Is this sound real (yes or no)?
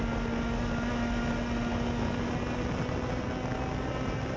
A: yes